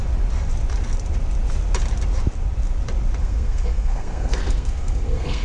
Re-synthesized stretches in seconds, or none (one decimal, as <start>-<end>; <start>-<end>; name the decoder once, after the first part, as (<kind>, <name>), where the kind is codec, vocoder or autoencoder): 3.2-5.4 (codec, SNAC)

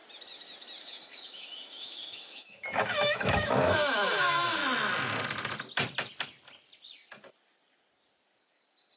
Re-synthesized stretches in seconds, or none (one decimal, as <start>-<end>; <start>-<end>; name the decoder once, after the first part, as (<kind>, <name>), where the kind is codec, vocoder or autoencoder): 0.8-4.6 (autoencoder, DAC-VAE)

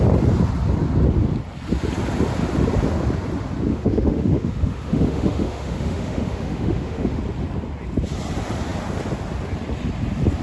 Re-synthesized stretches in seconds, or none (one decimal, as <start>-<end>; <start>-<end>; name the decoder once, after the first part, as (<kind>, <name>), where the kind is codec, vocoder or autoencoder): 3.7-7.2 (autoencoder, DAC-VAE)

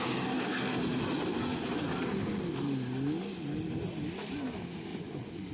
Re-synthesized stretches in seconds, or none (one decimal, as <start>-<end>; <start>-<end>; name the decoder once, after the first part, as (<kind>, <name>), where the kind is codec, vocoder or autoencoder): 4.9-5.5 (vocoder, Vocos)